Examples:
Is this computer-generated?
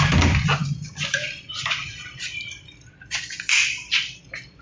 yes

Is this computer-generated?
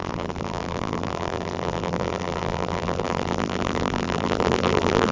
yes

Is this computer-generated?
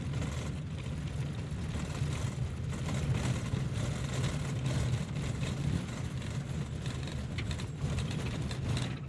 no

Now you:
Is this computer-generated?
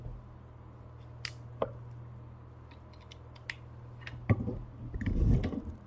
no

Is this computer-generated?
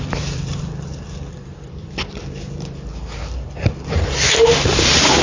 yes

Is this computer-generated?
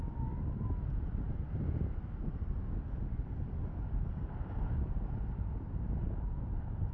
no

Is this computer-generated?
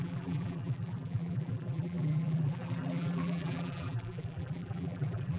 yes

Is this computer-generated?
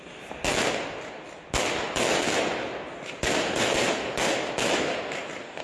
no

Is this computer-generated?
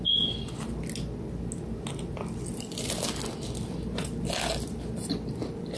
no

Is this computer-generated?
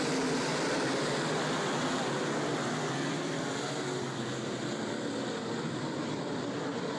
yes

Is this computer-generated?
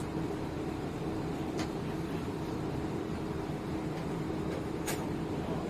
yes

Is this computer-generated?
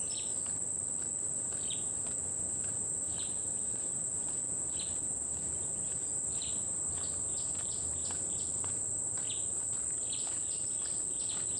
no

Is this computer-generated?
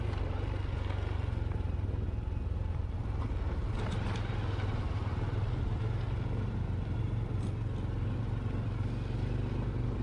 no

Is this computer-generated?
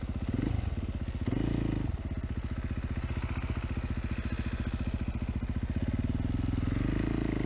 no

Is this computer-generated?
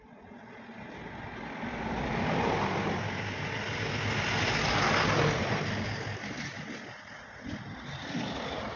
no